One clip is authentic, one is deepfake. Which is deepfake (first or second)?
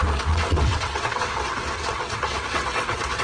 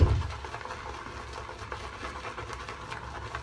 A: first